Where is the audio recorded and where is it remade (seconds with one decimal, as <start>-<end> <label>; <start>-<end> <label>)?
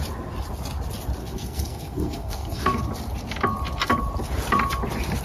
0.0-1.2 recorded; 1.2-2.8 remade; 2.8-5.2 recorded